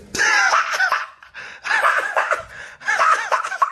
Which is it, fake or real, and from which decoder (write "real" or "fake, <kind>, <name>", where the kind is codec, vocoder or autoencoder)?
fake, vocoder, Vocos